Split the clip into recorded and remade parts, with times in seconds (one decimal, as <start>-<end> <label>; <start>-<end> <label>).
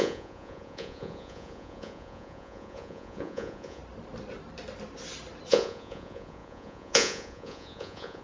0.0-3.8 remade; 3.8-5.5 recorded; 5.5-8.2 remade